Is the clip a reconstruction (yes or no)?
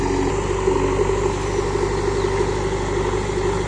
no